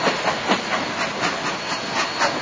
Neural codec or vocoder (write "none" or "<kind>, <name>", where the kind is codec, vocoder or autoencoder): none